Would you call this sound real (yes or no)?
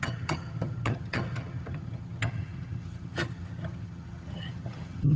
no